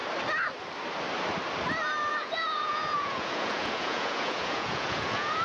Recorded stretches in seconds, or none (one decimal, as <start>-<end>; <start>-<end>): 0.0-2.1